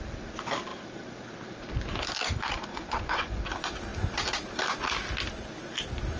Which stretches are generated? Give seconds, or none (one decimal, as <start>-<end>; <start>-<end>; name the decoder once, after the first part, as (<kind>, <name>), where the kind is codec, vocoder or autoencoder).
2.7-3.4 (vocoder, Vocos)